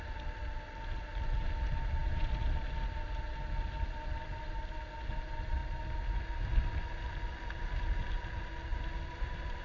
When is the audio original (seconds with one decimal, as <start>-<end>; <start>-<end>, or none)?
0.0-9.6